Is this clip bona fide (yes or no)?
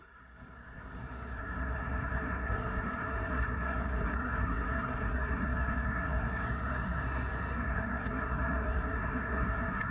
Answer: no